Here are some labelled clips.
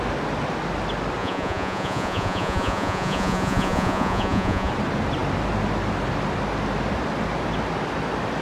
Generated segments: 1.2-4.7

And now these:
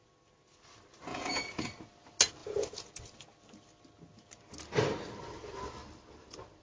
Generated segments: 1.1-1.7; 2.4-2.9

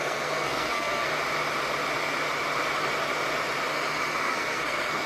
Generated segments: 0.0-1.1; 4.2-5.1